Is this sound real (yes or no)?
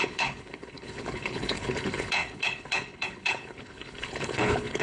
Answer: no